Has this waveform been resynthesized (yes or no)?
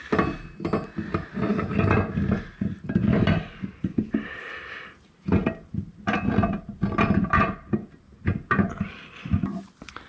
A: no